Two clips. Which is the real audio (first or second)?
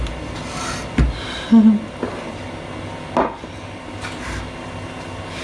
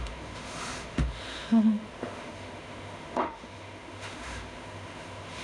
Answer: first